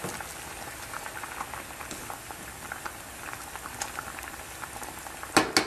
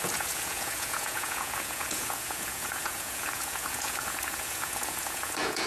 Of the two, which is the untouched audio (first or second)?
first